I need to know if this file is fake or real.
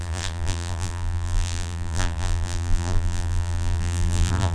fake